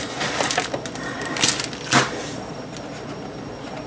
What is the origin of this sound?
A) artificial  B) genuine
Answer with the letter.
B